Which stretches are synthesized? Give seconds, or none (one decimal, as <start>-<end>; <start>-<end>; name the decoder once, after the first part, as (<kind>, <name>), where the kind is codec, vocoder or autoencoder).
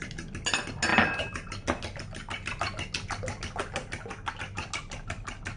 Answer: none